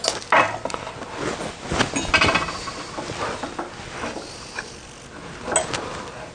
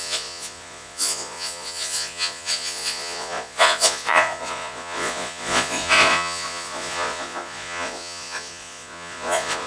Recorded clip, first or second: first